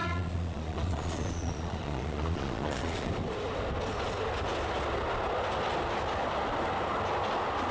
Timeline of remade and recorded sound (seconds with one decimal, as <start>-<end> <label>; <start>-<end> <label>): 0.0-3.1 remade; 3.1-7.7 recorded